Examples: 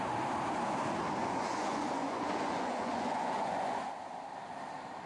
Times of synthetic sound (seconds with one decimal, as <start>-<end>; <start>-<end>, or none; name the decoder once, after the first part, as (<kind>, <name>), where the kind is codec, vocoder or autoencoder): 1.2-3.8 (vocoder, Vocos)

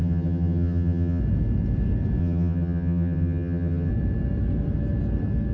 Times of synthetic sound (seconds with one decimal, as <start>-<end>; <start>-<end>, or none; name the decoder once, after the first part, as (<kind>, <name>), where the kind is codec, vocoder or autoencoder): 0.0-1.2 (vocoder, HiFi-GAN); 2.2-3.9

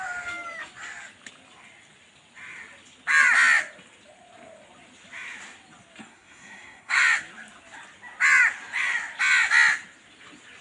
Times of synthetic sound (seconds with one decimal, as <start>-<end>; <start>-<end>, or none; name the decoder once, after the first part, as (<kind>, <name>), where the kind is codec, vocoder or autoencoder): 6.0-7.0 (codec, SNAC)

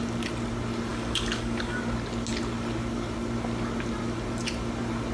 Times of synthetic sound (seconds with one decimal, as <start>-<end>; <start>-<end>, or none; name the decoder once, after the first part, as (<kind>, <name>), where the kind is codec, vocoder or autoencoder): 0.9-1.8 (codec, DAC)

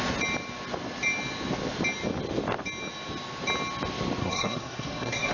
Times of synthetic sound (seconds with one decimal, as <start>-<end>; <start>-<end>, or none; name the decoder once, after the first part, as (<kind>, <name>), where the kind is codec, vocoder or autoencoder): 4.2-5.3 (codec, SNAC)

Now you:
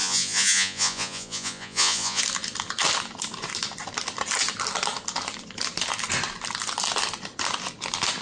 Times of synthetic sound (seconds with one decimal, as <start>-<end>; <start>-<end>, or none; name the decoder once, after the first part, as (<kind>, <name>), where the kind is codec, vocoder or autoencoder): 0.0-2.2 (vocoder, Vocos)

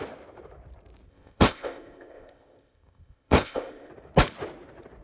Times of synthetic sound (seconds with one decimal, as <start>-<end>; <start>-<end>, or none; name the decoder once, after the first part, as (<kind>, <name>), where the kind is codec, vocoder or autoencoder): 1.1-3.9 (codec, ZipCodec)